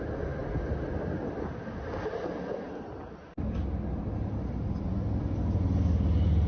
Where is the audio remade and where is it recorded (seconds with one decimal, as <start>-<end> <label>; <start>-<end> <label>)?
0.0-6.5 recorded